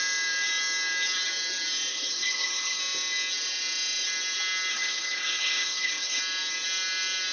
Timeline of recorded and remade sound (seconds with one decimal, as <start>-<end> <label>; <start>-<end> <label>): 0.0-1.9 recorded; 1.9-2.8 remade; 2.8-4.7 recorded; 4.7-6.2 remade; 6.2-7.3 recorded